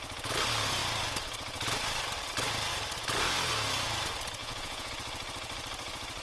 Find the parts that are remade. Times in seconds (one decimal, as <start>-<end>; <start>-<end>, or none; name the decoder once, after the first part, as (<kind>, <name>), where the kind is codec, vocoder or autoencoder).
4.4-4.9 (vocoder, Vocos)